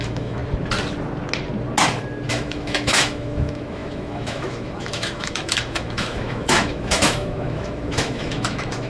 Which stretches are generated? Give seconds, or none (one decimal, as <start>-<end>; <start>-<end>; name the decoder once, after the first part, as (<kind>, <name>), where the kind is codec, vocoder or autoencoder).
0.0-0.4 (autoencoder, DAC-VAE); 2.3-8.9